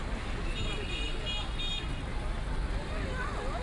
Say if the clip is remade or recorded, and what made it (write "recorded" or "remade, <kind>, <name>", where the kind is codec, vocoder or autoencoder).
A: recorded